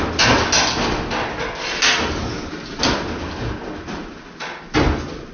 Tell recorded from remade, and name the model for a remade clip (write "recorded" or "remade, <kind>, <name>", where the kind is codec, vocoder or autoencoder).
recorded